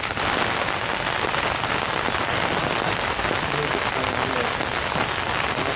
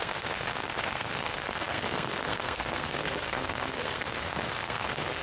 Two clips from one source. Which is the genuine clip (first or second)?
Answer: first